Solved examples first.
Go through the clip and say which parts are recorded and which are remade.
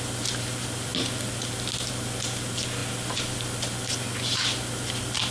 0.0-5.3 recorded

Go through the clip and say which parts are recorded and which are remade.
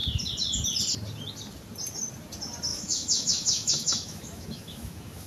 0.0-2.7 recorded; 2.7-5.3 remade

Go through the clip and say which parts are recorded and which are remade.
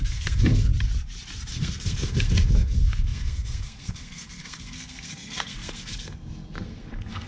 0.0-0.7 remade; 0.7-1.5 recorded; 1.5-7.3 remade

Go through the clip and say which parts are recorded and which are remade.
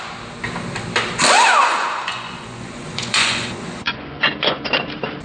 0.0-1.6 recorded; 1.6-4.7 remade; 4.7-5.2 recorded